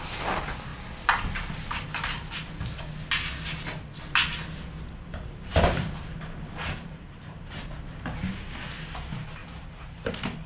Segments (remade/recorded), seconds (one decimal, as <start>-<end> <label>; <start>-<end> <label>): 0.0-5.1 recorded; 5.1-8.3 remade; 8.3-9.4 recorded; 9.4-10.1 remade; 10.1-10.5 recorded